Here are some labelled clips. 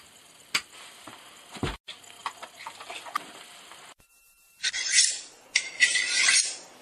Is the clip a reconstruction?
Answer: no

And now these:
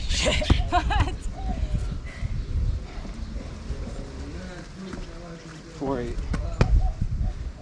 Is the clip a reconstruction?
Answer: no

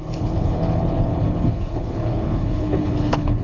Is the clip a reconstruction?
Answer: yes